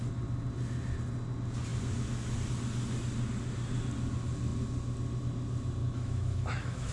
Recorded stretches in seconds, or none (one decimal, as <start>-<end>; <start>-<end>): 0.0-5.8